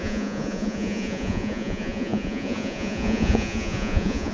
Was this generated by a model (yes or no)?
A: yes